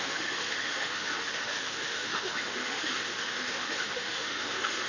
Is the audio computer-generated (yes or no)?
yes